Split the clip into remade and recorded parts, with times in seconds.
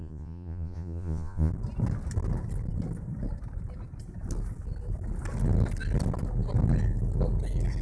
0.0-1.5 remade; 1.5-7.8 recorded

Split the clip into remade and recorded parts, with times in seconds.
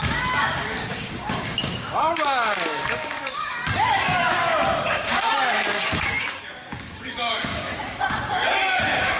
0.0-3.6 remade; 3.6-4.9 recorded; 4.9-7.7 remade; 7.7-8.6 recorded; 8.6-9.2 remade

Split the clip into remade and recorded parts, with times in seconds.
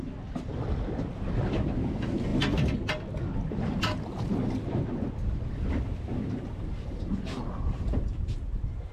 0.0-8.9 recorded